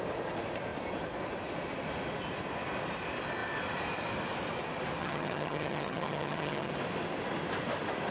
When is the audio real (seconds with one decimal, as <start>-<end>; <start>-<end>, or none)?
0.0-5.0; 6.7-8.1